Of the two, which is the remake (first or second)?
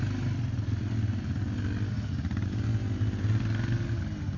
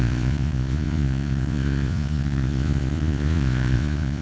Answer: second